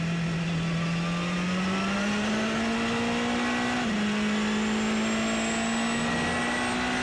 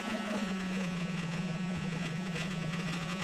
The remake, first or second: second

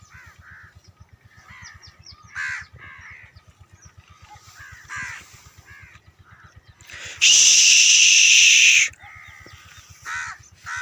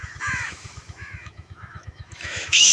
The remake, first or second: second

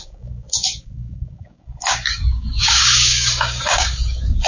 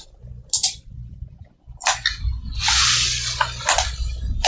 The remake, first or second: first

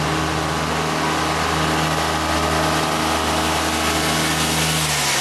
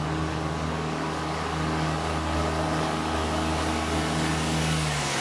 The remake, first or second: second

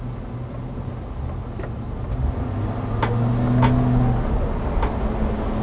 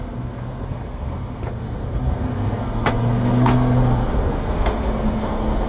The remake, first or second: second